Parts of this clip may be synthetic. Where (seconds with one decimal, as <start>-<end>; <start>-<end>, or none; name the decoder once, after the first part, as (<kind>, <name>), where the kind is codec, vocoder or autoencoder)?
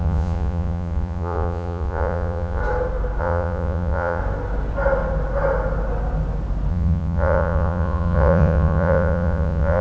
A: 0.0-2.6 (vocoder, Vocos); 3.2-4.2; 6.7-9.8